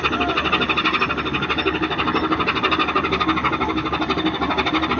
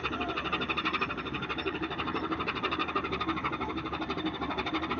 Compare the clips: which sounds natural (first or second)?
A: first